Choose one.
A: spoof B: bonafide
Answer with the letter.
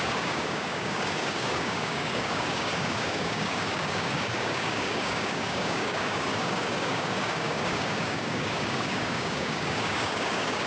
A